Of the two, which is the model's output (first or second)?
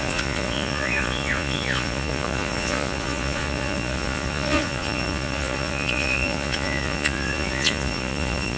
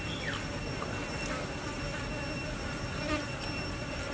first